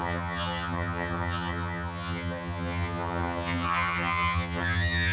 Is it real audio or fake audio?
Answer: fake